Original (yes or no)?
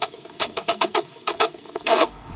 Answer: no